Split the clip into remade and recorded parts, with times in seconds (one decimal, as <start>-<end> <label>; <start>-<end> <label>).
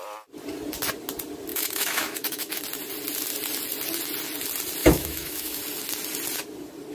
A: 0.0-1.5 recorded; 1.5-2.6 remade; 2.6-4.8 recorded; 4.8-5.6 remade; 5.6-6.9 recorded